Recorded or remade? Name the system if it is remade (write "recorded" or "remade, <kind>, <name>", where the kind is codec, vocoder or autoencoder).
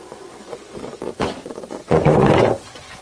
remade, vocoder, Vocos